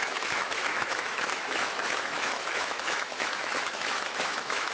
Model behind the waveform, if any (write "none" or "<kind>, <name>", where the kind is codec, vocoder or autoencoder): autoencoder, DAC-VAE